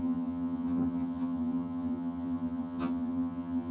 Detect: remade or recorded remade